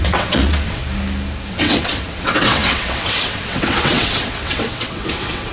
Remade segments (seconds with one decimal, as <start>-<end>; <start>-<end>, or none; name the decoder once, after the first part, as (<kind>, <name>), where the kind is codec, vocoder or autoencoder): 0.0-0.8 (vocoder, WaveNeXt); 1.5-5.5